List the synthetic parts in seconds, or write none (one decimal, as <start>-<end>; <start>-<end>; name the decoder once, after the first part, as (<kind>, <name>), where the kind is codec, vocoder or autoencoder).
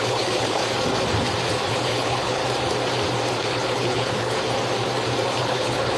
0.0-0.6 (codec, HILCodec); 1.7-2.4; 3.4-4.4; 5.4-6.0